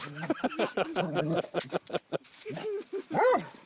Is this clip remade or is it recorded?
recorded